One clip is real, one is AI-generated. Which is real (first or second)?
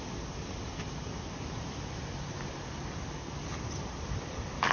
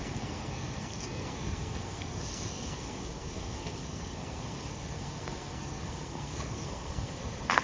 first